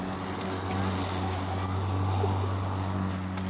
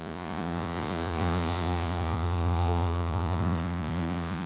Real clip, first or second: first